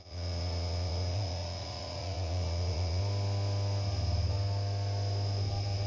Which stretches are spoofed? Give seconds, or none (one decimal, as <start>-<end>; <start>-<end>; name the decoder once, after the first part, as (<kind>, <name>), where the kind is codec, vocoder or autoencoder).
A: 0.0-3.0 (vocoder, Vocos)